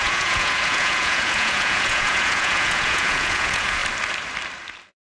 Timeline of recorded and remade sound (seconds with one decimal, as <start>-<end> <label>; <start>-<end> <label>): 0.0-3.8 remade; 3.8-5.1 recorded